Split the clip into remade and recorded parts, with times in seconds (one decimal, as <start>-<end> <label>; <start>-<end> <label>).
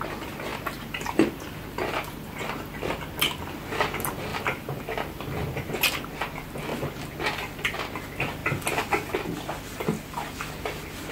0.0-0.5 recorded; 0.5-2.5 remade; 2.5-4.3 recorded; 4.3-5.7 remade; 5.7-11.1 recorded